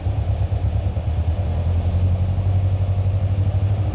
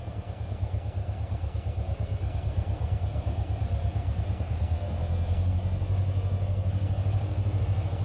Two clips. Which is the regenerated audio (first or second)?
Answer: second